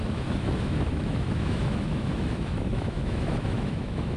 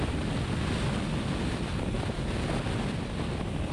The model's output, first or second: first